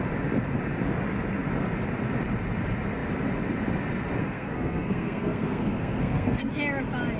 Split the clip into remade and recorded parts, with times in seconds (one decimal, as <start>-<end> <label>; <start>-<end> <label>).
0.0-4.2 recorded; 4.2-6.5 remade; 6.5-7.2 recorded